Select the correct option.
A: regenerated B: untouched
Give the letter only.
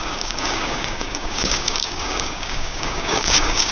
A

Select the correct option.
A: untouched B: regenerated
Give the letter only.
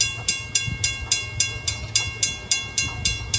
A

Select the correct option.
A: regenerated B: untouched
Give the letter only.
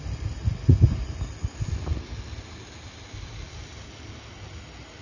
B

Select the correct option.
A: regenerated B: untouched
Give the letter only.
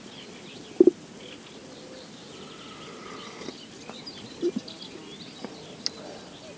B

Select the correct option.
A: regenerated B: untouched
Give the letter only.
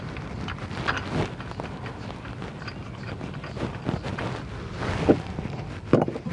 B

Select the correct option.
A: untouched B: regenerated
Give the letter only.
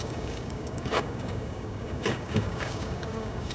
B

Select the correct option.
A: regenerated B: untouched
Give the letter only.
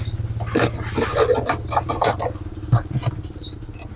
B